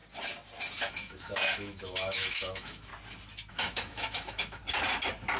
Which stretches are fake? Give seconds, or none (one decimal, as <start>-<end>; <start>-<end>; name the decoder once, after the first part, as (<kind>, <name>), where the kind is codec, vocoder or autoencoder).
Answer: 0.9-2.9 (autoencoder, DAC-VAE); 3.5-4.6